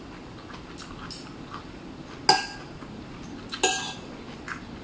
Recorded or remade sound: recorded